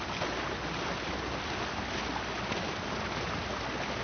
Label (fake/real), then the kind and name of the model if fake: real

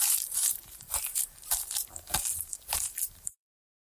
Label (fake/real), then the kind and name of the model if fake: fake, vocoder, BigVGAN v2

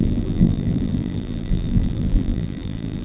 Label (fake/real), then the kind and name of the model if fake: fake, vocoder, BigVGAN v2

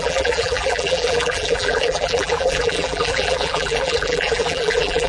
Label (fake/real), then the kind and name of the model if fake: fake, vocoder, BigVGAN v2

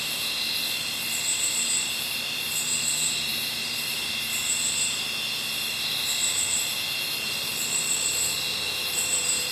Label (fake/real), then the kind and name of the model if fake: fake, vocoder, BigVGAN v2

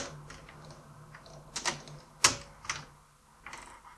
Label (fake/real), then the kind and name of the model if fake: real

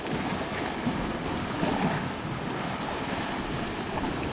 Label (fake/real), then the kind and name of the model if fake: fake, vocoder, BigVGAN v2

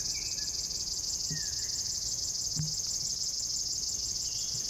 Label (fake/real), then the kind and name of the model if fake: real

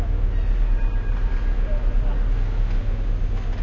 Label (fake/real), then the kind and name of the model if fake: real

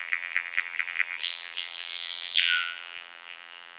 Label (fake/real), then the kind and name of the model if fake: fake, vocoder, BigVGAN v2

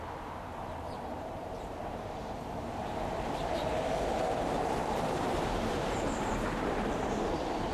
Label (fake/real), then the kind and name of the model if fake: fake, vocoder, BigVGAN v2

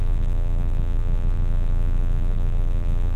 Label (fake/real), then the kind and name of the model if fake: fake, vocoder, BigVGAN v2